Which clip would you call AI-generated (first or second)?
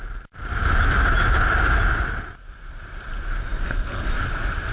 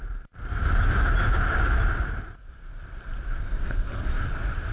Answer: second